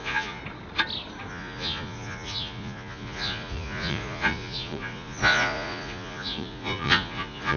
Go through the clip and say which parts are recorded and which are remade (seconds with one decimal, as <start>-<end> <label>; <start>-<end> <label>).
0.0-0.4 remade; 0.4-1.3 recorded; 1.3-7.6 remade